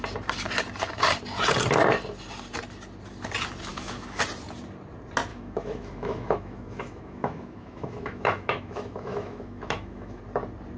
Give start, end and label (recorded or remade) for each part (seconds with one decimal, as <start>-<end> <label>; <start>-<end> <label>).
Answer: 0.0-3.7 recorded; 3.7-4.2 remade; 4.2-5.3 recorded; 5.3-10.2 remade; 10.2-10.8 recorded